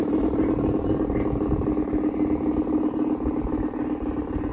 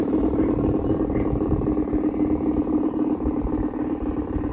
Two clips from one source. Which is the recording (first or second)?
first